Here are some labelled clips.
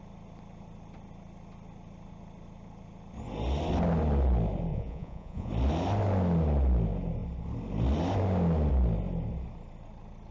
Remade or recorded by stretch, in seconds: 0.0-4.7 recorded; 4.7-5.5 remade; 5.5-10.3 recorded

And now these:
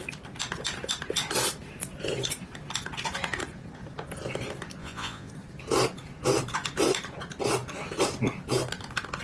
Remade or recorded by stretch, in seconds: 0.0-4.8 recorded; 4.8-5.3 remade; 5.3-9.2 recorded

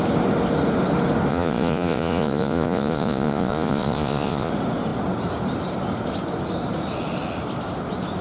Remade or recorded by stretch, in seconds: 0.0-1.3 recorded; 1.3-4.5 remade; 4.5-8.2 recorded

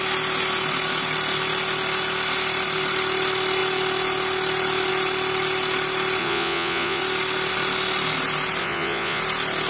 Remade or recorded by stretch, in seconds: 0.0-6.2 recorded; 6.2-7.0 remade; 7.0-8.6 recorded; 8.6-9.2 remade; 9.2-9.7 recorded

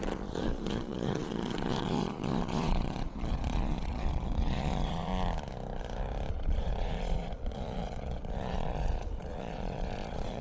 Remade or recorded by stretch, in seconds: 0.0-5.1 remade; 5.1-6.3 recorded; 6.3-10.4 remade

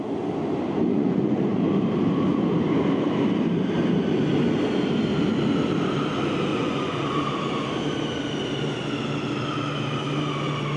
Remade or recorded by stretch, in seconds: 0.0-0.9 recorded; 0.9-1.6 remade; 1.6-6.5 recorded; 6.5-7.2 remade; 7.2-10.8 recorded